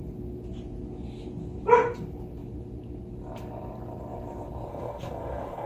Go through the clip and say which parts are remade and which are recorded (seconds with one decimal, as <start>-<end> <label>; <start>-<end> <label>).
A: 0.0-4.7 recorded; 4.7-5.7 remade